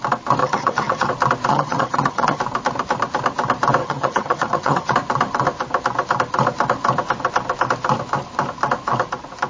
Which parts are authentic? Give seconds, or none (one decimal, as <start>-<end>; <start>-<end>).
0.0-0.4; 1.1-1.5; 2.4-3.8; 4.9-9.5